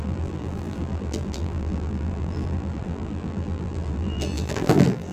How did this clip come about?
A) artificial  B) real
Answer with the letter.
A